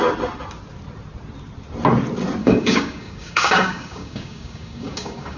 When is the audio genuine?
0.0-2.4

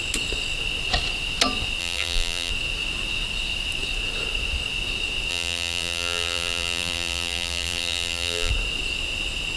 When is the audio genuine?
0.0-1.8; 2.5-5.3; 8.5-9.6

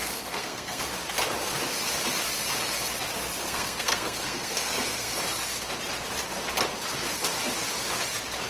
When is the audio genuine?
0.8-3.4; 5.1-8.5

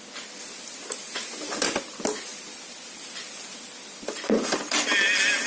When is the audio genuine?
0.0-5.5

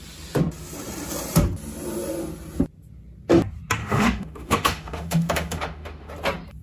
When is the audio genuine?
0.0-3.8; 6.1-6.6